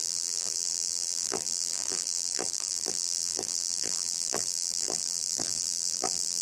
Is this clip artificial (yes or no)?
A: yes